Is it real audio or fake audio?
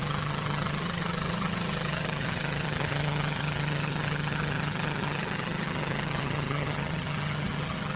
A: fake